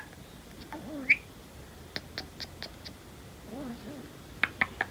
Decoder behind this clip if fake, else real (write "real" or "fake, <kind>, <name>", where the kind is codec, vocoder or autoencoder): real